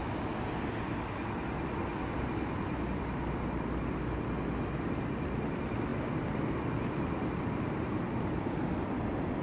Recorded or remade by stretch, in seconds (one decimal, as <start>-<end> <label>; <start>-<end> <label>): 0.0-9.4 recorded